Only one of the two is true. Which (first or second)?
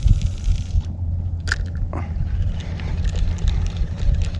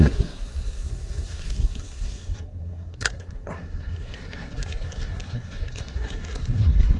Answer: first